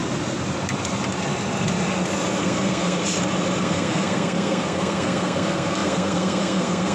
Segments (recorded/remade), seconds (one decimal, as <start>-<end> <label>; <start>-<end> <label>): 0.0-2.4 recorded; 2.4-3.0 remade; 3.0-3.6 recorded; 3.6-6.9 remade